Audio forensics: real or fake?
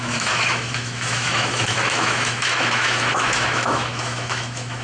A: fake